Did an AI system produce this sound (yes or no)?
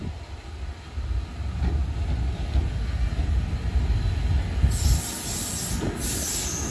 no